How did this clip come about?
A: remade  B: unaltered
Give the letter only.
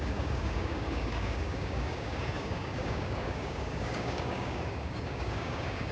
A